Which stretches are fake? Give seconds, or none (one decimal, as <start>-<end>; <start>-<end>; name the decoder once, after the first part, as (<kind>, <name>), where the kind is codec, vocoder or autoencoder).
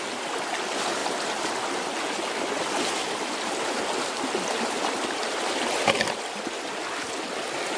none